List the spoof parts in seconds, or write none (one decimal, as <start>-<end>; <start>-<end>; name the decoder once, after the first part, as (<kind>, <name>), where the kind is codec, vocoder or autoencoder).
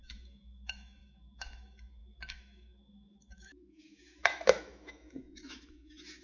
0.0-6.2 (autoencoder, DAC-VAE)